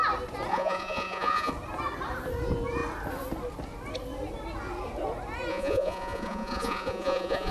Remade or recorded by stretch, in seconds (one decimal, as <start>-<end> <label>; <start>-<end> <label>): 0.0-0.5 recorded; 0.5-1.5 remade; 1.5-5.5 recorded; 5.5-7.5 remade